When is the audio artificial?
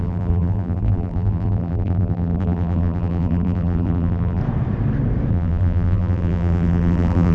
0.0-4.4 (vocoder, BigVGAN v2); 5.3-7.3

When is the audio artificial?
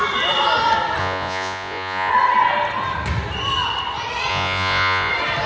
1.0-2.1 (vocoder, Vocos); 4.3-5.1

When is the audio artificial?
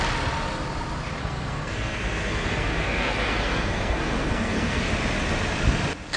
1.2-4.9 (codec, SNAC)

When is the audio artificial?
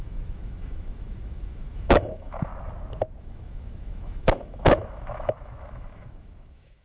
0.0-2.5 (autoencoder, DAC-VAE); 3.2-6.8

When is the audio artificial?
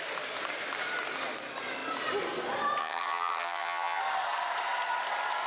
2.8-4.0 (vocoder, HiFi-GAN)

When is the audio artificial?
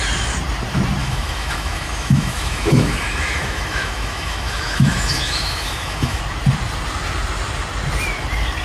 1.0-6.2 (autoencoder, DAC-VAE)